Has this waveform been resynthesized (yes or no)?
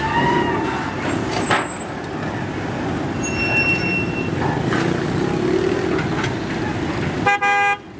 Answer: no